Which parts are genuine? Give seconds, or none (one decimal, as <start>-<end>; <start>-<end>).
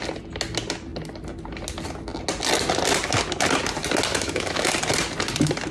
0.0-4.1; 4.7-5.7